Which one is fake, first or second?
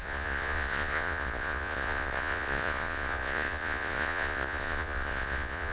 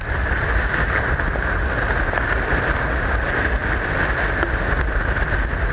first